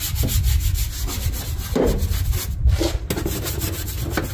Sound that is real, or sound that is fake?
real